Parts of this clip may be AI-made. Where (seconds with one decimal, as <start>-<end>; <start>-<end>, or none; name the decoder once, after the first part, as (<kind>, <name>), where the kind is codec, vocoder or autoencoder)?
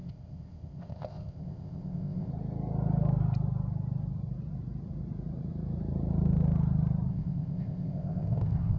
0.0-2.3 (codec, ZipCodec); 7.1-8.8